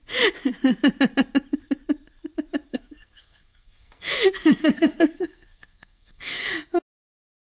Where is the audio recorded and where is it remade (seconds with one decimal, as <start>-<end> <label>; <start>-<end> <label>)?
0.0-2.7 recorded; 2.7-6.5 remade; 6.5-7.4 recorded